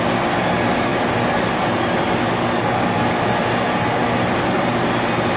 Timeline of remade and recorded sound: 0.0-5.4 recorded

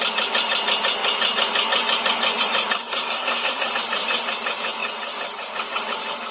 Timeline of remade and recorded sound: 0.0-2.8 recorded; 2.8-3.7 remade; 3.7-6.3 recorded